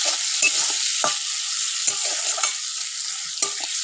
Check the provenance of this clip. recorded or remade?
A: recorded